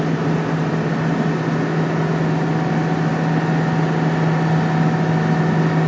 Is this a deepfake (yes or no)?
no